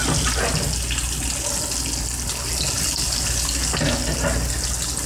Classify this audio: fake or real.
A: real